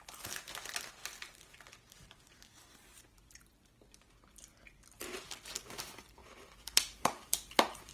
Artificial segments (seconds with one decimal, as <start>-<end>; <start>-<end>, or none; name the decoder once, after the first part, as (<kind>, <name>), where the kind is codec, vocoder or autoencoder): 6.2-7.9 (vocoder, BigVGAN v2)